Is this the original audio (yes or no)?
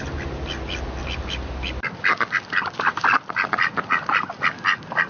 yes